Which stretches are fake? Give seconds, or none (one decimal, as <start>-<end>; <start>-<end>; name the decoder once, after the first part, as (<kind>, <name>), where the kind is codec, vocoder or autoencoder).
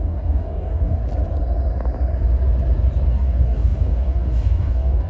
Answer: 0.0-1.0 (codec, DAC); 3.1-5.1